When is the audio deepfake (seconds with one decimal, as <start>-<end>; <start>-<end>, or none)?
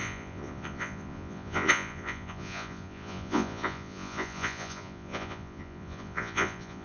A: 0.0-6.8